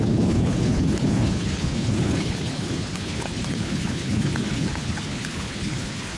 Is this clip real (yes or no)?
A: no